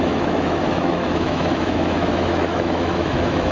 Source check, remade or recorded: remade